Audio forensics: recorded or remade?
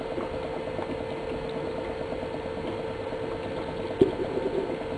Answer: recorded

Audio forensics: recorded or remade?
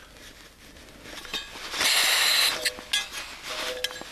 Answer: recorded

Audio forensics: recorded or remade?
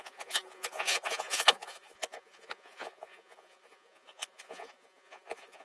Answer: remade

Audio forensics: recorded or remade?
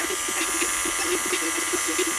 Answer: remade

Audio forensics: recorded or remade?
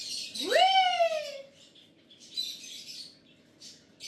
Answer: recorded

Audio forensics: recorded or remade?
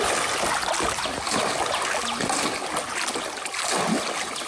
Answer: recorded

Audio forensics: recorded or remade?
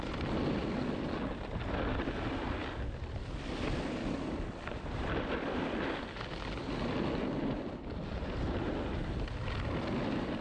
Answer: recorded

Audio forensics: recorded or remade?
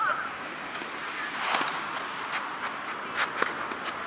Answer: recorded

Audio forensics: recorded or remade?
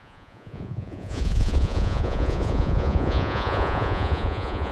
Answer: remade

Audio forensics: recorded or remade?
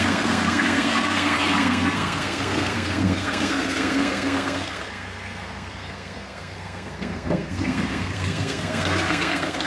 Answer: remade